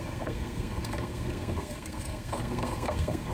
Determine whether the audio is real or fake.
fake